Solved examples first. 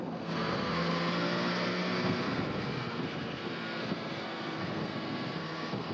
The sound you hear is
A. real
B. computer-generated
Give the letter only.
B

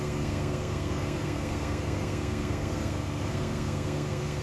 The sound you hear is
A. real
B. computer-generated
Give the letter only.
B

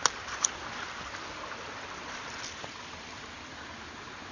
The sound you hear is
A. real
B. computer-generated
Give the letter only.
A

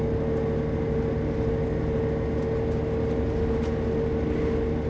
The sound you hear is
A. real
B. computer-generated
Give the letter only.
A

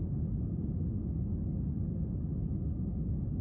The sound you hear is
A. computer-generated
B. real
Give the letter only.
B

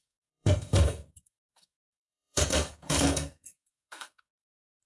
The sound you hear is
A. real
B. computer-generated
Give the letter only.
B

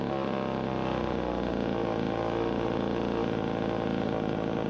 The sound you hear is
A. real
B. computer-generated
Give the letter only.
A